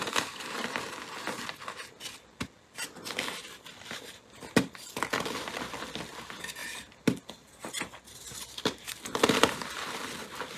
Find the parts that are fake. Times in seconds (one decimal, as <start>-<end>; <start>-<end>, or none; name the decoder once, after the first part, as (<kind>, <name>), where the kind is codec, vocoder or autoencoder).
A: none